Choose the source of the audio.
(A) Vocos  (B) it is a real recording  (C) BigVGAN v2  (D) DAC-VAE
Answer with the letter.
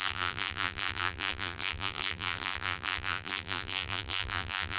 C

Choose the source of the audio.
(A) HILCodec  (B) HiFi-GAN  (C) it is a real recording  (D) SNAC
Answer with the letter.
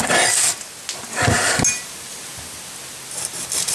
C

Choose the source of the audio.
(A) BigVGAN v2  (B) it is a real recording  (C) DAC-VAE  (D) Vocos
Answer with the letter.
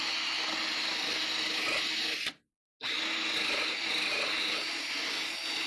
B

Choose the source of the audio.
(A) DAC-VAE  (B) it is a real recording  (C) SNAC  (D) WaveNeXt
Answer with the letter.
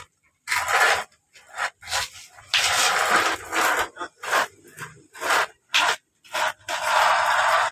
B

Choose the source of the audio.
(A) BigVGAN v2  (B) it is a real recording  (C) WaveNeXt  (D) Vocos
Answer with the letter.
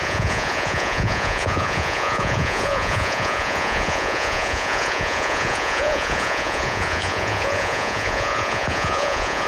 D